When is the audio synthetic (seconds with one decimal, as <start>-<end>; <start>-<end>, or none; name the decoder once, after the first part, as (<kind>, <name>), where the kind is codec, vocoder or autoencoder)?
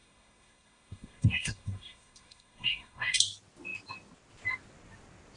0.0-3.2 (codec, SNAC)